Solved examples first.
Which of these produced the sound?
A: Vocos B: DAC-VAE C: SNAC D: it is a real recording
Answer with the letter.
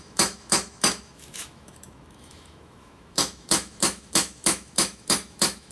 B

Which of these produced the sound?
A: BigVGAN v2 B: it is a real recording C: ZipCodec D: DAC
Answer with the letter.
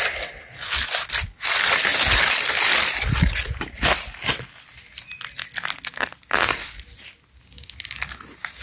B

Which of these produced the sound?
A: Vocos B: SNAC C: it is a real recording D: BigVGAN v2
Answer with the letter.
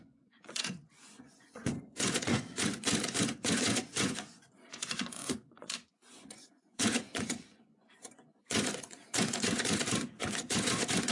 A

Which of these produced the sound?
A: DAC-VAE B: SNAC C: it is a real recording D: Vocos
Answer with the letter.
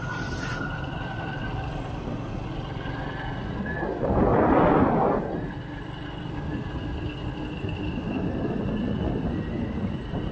C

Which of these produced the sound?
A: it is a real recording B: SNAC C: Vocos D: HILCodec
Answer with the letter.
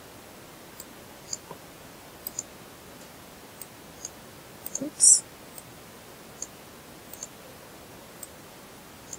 A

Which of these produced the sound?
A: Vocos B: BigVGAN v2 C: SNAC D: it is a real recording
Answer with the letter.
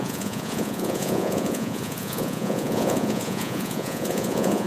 A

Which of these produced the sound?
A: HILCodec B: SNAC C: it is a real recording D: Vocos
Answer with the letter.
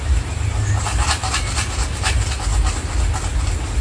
C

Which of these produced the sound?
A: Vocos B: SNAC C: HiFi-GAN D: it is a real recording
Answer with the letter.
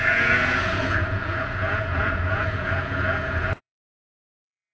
A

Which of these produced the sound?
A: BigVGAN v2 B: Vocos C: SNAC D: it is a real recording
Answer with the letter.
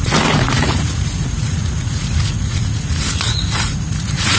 B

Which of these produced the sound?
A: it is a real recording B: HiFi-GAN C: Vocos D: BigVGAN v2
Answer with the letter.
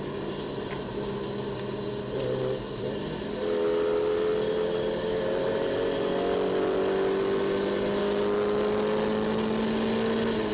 A